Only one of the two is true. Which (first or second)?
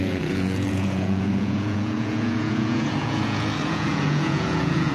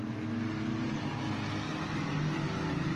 second